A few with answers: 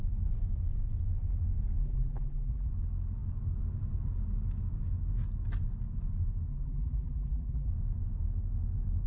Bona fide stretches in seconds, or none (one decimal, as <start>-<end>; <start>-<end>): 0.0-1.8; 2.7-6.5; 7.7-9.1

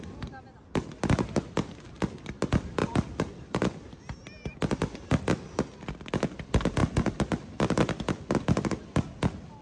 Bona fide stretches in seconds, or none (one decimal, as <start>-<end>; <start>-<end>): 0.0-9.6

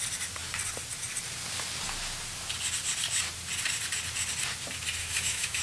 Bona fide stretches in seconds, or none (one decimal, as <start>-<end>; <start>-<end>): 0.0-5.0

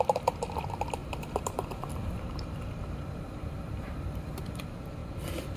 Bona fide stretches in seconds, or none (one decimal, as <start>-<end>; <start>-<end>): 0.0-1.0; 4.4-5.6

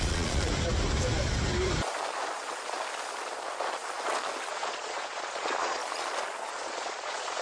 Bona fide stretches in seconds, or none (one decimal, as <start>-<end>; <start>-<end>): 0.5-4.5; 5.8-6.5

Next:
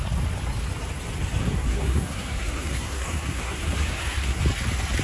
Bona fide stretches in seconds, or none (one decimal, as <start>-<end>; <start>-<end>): 0.0-1.4; 4.4-5.0